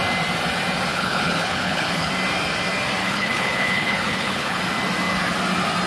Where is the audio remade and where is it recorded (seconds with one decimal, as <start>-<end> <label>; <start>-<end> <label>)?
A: 0.0-0.9 recorded; 0.9-2.1 remade; 2.1-3.0 recorded; 3.0-4.6 remade; 4.6-5.9 recorded